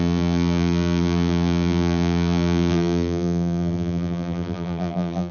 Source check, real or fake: fake